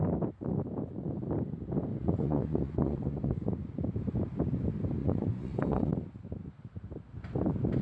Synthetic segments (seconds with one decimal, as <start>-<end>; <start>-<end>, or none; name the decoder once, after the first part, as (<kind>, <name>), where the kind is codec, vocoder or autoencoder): 1.9-3.5 (vocoder, Vocos); 5.0-5.9